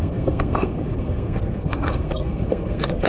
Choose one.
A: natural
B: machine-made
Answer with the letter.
B